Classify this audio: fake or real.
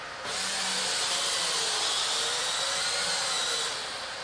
real